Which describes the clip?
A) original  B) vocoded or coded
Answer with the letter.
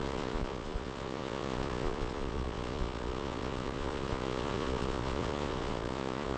B